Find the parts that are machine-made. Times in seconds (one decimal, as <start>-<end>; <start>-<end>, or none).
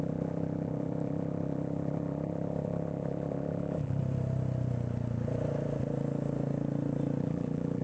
0.0-4.0; 7.2-7.8